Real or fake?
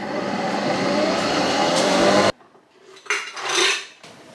fake